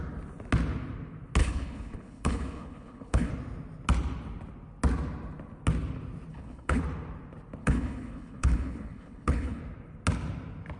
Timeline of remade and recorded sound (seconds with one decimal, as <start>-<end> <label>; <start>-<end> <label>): 0.0-1.4 recorded; 1.4-3.3 remade; 3.3-6.3 recorded; 6.3-6.8 remade; 6.8-7.6 recorded; 7.6-9.6 remade; 9.6-10.8 recorded